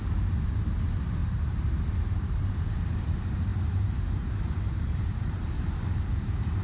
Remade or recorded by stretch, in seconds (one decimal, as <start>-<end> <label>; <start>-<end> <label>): 0.0-6.6 remade

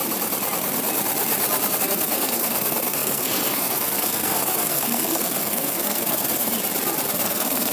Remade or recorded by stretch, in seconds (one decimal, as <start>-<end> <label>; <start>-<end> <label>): 0.0-1.8 recorded; 1.8-6.5 remade; 6.5-7.1 recorded; 7.1-7.7 remade